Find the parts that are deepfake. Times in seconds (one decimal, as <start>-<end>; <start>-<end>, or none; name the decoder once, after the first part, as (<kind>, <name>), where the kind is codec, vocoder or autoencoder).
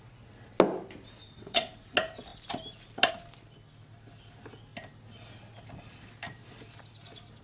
1.2-1.7 (vocoder, WaveNeXt)